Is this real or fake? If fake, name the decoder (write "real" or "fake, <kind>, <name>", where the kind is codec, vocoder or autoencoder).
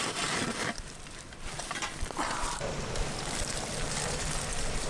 fake, vocoder, BigVGAN v2